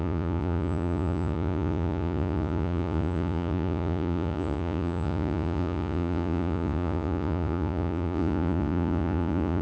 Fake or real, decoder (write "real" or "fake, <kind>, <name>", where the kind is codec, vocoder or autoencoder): fake, vocoder, Vocos